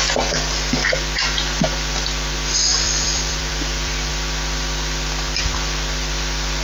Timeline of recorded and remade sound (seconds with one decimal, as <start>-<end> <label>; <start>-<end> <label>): 0.0-2.7 recorded; 2.7-4.1 remade; 4.1-6.6 recorded